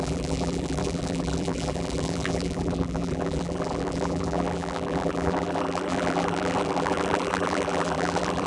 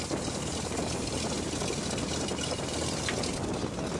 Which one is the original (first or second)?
second